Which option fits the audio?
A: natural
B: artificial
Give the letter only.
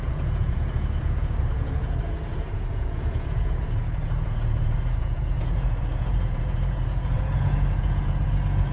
B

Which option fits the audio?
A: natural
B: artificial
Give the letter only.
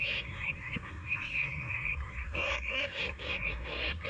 B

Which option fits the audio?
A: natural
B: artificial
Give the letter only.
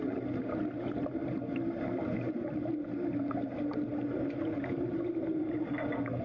A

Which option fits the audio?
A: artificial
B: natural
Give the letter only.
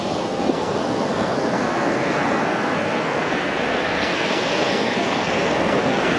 A